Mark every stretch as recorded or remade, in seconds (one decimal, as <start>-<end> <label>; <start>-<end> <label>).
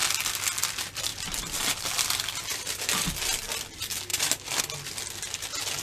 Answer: 0.0-1.1 recorded; 1.1-1.7 remade; 1.7-4.1 recorded; 4.1-4.6 remade; 4.6-5.8 recorded